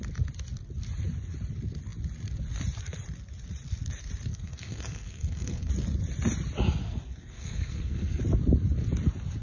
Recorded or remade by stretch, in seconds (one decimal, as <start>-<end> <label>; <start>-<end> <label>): 0.0-4.3 recorded; 4.3-5.7 remade; 5.7-6.8 recorded; 6.8-8.2 remade; 8.2-9.4 recorded